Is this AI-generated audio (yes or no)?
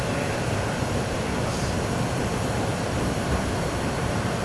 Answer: yes